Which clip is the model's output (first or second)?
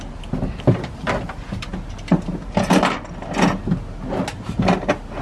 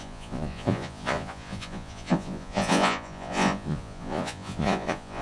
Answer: second